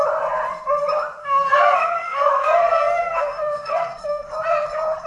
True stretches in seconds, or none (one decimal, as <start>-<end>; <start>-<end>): 0.0-1.2; 4.3-5.1